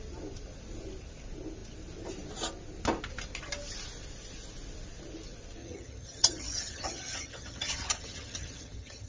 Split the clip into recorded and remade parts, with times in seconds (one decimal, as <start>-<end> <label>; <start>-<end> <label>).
0.0-5.6 recorded; 5.6-9.1 remade